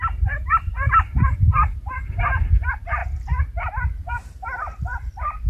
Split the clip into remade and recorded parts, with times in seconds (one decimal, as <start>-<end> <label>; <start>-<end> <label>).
0.0-5.5 recorded